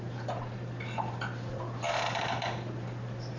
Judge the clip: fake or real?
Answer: fake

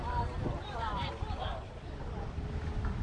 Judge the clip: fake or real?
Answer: fake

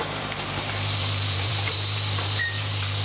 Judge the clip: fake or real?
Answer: fake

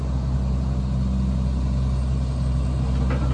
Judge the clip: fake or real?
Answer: real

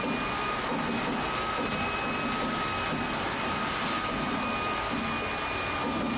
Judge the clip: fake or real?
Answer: real